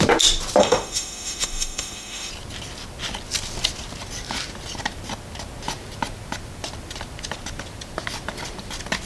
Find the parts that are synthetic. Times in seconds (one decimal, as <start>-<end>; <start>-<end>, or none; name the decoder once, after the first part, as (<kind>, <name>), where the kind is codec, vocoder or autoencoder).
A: 0.6-2.3 (autoencoder, DAC-VAE)